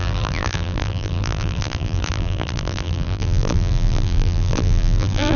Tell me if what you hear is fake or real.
fake